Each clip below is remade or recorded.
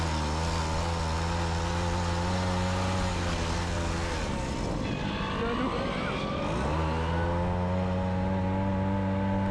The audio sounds recorded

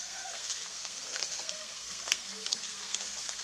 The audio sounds remade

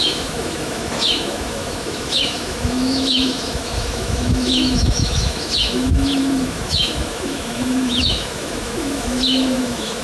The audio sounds remade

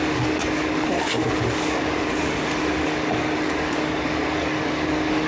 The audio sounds remade